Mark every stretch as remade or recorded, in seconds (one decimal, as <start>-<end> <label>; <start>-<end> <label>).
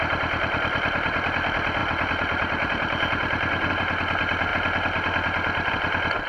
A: 0.0-1.8 recorded; 1.8-3.7 remade; 3.7-6.3 recorded